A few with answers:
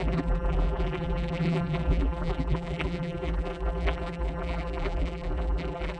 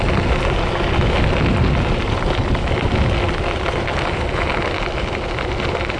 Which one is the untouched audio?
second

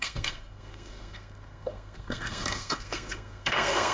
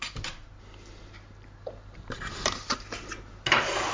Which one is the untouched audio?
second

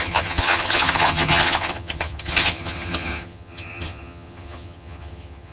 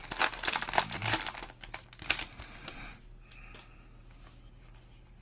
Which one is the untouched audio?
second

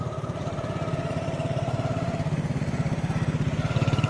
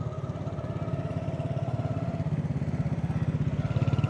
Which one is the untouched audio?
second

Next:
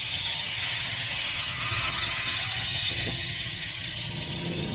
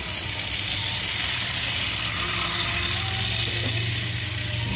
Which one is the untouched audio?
second